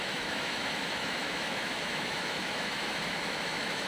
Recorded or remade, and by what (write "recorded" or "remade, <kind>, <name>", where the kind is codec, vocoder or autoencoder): remade, autoencoder, DAC-VAE